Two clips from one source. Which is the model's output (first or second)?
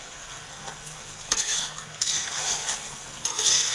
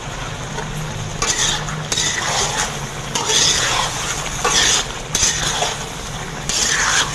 first